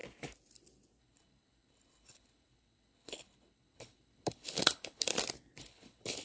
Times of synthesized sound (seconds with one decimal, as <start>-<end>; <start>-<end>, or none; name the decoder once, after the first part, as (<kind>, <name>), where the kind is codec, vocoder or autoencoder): 1.0-5.1 (codec, HILCodec); 5.6-6.2